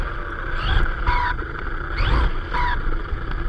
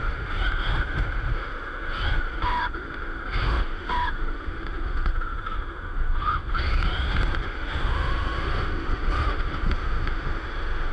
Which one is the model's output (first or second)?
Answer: second